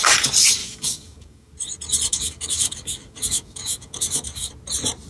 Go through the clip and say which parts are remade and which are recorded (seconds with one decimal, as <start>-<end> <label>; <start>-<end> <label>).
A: 0.0-0.6 recorded; 0.6-1.5 remade; 1.5-2.1 recorded; 2.1-4.5 remade; 4.5-5.1 recorded